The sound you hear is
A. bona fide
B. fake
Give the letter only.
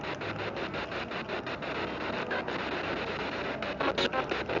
A